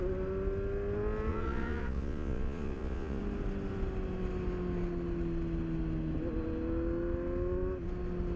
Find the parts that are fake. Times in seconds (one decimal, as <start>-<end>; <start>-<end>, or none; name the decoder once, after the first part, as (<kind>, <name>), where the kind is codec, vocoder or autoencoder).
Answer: 1.3-3.2 (vocoder, Vocos)